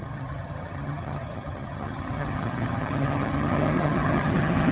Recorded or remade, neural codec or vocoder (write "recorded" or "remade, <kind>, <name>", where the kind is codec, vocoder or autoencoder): remade, vocoder, HiFi-GAN